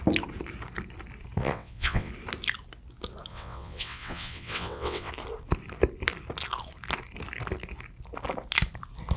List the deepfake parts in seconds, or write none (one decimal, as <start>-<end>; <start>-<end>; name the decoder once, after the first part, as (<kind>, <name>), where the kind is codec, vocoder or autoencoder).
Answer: 1.4-2.1 (vocoder, WaveNeXt); 3.3-5.1